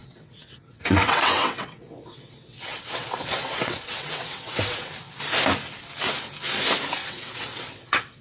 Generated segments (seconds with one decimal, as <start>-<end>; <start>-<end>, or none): 0.0-4.9; 7.0-8.2